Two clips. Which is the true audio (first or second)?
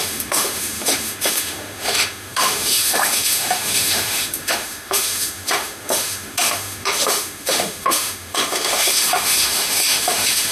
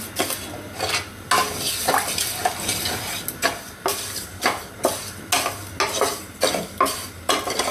second